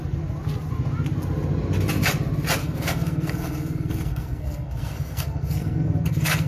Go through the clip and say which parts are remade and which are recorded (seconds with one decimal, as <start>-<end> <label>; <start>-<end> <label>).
0.0-2.6 recorded; 2.6-6.5 remade